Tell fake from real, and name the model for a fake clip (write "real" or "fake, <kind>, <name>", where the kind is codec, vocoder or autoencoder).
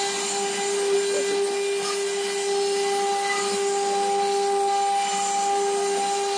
real